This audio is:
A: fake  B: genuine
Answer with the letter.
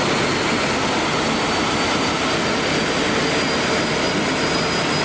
B